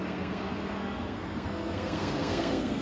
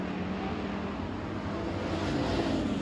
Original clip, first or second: second